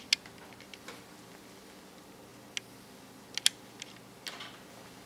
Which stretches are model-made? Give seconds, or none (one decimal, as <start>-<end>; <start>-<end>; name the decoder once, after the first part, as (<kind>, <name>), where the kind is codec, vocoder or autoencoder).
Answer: none

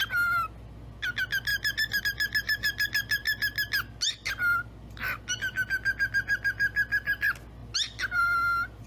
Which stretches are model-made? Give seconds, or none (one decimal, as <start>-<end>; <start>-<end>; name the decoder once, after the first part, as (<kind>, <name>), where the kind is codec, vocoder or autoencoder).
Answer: none

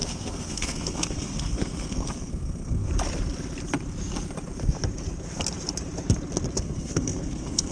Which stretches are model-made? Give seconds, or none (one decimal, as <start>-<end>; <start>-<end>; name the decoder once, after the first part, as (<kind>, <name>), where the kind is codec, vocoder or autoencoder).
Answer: 0.0-2.9 (codec, SNAC); 6.6-7.7

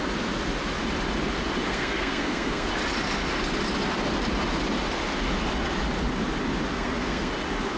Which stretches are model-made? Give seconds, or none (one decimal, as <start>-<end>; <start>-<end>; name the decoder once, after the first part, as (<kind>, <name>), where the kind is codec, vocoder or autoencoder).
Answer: 1.7-2.7 (codec, SNAC); 6.7-7.3

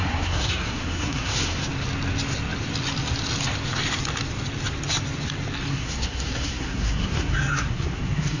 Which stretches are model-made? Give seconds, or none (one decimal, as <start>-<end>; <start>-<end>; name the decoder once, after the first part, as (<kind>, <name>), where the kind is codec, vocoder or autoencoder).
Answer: 0.0-1.7 (codec, SNAC); 5.7-8.4

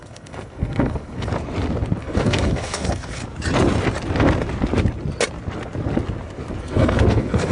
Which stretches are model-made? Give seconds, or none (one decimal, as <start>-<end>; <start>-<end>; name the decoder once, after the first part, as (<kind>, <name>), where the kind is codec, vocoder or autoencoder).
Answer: 0.0-1.3 (codec, SNAC); 2.0-3.2; 6.6-7.5

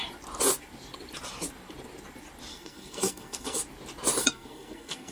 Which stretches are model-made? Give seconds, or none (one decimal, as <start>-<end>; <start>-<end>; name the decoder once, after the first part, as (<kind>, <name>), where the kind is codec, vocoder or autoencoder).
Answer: 2.5-3.6 (codec, SNAC); 4.2-5.1

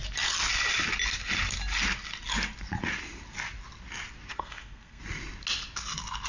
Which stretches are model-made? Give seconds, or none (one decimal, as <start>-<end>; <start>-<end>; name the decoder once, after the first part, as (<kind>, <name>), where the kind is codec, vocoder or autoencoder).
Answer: 4.3-5.0 (codec, SNAC)